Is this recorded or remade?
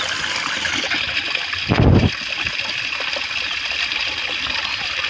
recorded